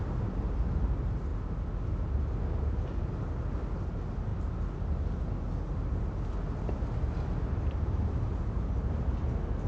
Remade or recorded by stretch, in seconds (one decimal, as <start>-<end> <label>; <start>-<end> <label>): 0.0-9.7 recorded